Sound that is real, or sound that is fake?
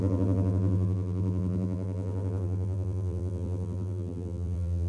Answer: fake